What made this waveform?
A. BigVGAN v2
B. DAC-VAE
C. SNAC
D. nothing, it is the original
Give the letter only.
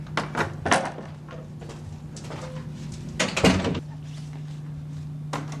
D